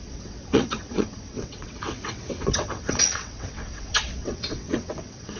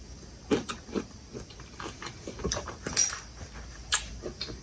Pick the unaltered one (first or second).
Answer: second